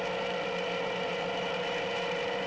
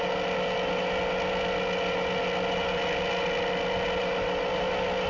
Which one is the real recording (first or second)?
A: second